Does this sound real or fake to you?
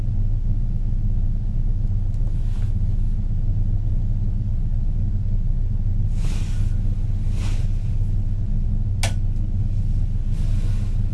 real